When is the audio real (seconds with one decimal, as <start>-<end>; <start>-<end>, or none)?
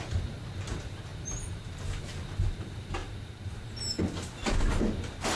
0.0-1.1; 2.6-3.0; 3.7-5.4